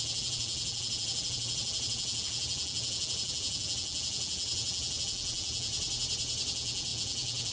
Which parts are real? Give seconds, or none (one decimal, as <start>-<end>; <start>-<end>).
5.7-6.5